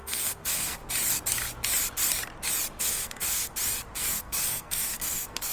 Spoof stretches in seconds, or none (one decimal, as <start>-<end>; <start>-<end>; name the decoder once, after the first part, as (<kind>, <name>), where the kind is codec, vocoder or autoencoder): 0.0-0.8 (codec, SNAC); 2.8-3.5; 4.0-5.5